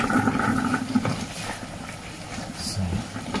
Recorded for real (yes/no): yes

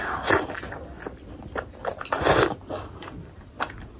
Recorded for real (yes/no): yes